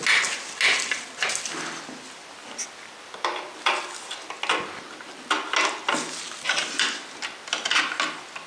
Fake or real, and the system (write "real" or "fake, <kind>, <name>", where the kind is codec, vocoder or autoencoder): real